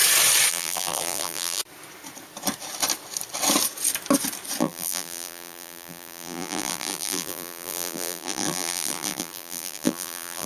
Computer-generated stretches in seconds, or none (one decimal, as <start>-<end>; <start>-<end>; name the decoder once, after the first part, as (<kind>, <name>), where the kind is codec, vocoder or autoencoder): 0.5-1.6 (vocoder, BigVGAN v2); 4.6-10.5